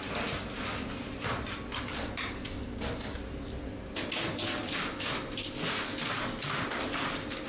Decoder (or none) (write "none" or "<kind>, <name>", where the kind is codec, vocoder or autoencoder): none